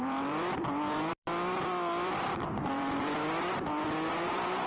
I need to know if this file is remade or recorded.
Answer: remade